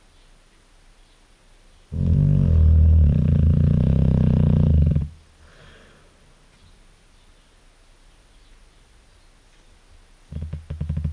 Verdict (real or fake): real